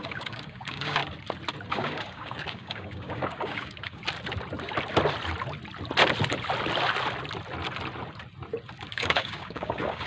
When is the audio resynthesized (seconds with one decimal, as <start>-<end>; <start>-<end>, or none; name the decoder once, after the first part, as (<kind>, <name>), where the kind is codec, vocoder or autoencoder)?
0.0-1.0 (codec, DAC); 1.7-4.0; 8.9-10.1